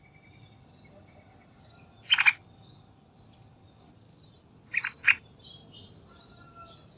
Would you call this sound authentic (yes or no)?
yes